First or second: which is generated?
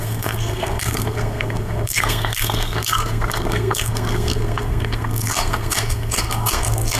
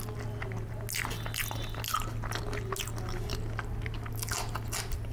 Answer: first